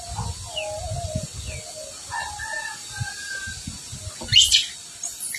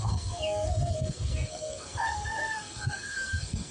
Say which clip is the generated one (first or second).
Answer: second